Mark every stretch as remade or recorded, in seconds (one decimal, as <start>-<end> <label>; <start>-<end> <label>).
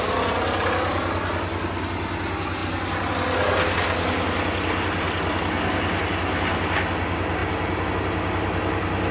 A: 0.0-9.1 recorded